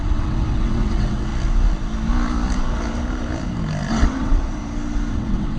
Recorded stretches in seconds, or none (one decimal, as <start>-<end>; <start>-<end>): 1.3-3.9; 4.6-5.1